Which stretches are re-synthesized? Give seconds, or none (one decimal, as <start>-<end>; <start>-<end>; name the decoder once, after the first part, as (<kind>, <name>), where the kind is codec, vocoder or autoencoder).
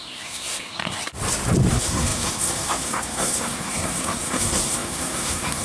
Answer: 0.0-1.0 (codec, SNAC); 1.7-5.6